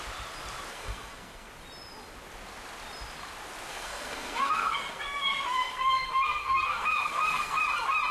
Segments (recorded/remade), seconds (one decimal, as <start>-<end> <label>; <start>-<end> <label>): 0.0-0.7 recorded; 0.7-1.5 remade; 1.5-3.7 recorded; 3.7-7.6 remade; 7.6-8.1 recorded